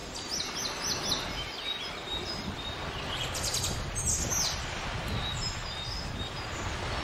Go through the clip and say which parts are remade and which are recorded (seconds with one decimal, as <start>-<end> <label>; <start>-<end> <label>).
0.0-7.0 recorded